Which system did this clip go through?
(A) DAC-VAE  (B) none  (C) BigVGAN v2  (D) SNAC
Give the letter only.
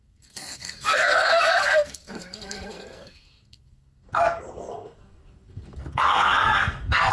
D